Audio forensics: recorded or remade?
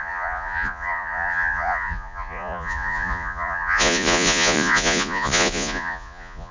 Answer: remade